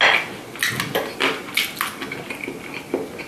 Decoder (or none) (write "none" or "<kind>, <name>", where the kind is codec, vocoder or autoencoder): none